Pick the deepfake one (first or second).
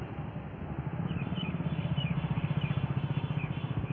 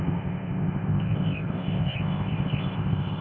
second